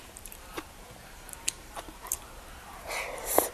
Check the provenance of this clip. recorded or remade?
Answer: remade